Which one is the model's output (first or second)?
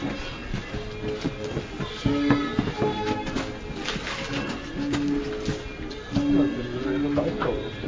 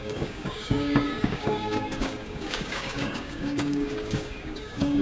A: second